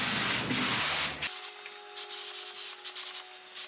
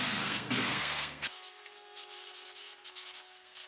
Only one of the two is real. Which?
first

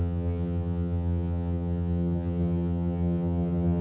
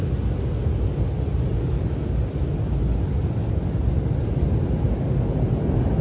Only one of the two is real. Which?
second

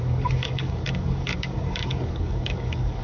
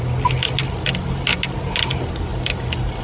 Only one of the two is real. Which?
second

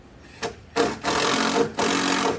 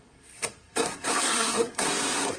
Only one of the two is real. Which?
first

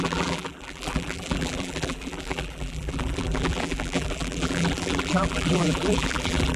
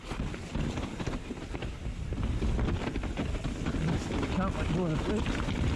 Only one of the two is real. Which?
second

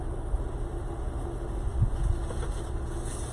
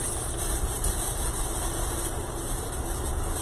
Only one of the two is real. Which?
first